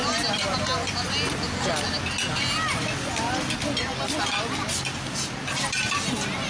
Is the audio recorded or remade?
recorded